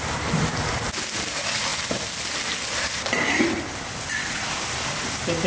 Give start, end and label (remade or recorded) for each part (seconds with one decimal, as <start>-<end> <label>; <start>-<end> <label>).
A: 0.0-5.5 recorded